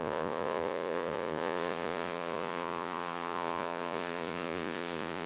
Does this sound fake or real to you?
fake